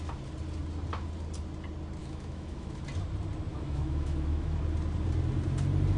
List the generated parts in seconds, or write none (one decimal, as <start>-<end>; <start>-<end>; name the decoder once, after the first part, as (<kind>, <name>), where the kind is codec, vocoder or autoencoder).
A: 2.0-2.8 (autoencoder, DAC-VAE); 3.5-4.6